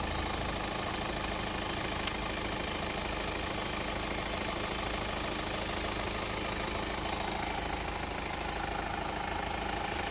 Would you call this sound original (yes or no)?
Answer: yes